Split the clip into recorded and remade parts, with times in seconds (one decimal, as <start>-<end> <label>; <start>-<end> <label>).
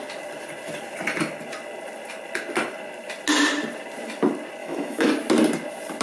0.0-4.6 recorded; 4.6-5.1 remade; 5.1-6.0 recorded